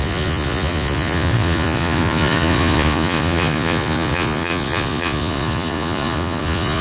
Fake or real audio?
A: fake